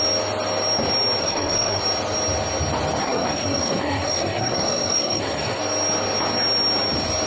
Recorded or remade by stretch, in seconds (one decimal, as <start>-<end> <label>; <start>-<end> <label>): 0.0-1.2 recorded; 1.2-1.8 remade; 1.8-3.0 recorded; 3.0-5.6 remade; 5.6-7.3 recorded

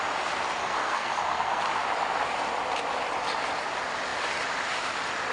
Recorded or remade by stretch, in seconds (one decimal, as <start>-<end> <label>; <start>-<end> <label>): 0.0-0.6 recorded; 0.6-1.6 remade; 1.6-5.3 recorded